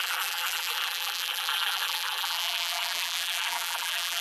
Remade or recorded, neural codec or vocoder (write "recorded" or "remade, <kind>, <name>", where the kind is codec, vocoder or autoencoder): remade, vocoder, BigVGAN v2